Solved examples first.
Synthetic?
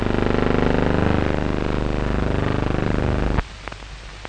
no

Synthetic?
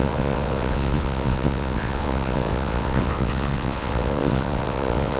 yes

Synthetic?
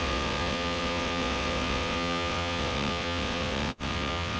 yes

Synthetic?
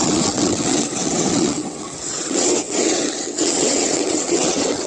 yes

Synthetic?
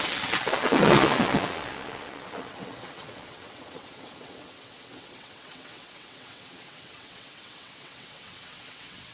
yes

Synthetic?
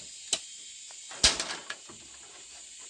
no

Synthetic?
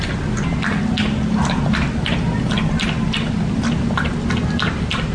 no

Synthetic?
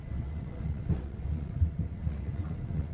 yes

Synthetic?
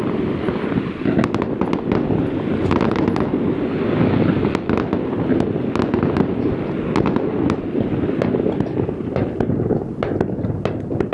no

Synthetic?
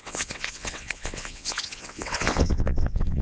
yes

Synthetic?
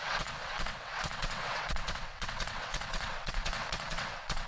yes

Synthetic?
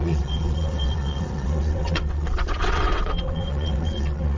yes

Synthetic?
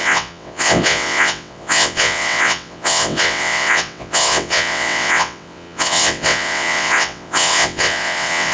yes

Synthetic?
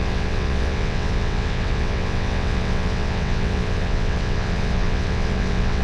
yes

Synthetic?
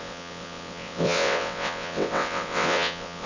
yes